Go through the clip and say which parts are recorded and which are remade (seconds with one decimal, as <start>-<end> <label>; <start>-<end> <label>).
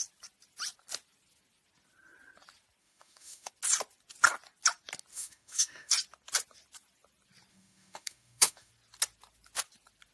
0.0-2.8 recorded; 2.8-3.5 remade; 3.5-5.1 recorded; 5.1-5.9 remade; 5.9-7.5 recorded; 7.5-8.7 remade; 8.7-10.1 recorded